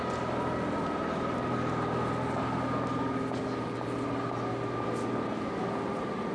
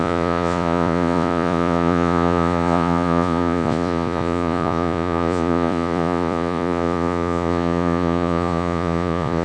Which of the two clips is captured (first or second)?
first